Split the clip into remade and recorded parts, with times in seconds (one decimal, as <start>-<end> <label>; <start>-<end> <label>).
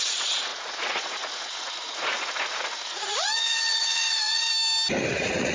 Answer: 0.0-4.5 remade; 4.5-5.1 recorded; 5.1-5.5 remade